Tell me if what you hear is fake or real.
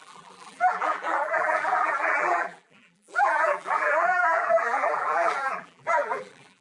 fake